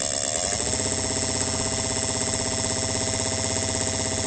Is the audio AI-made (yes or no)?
no